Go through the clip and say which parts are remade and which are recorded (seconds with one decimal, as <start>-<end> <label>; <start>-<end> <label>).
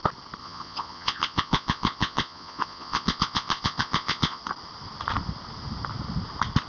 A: 0.0-0.4 recorded; 0.4-4.4 remade; 4.4-6.7 recorded